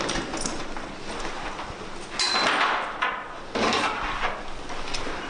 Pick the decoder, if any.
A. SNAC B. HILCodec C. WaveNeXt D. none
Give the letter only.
D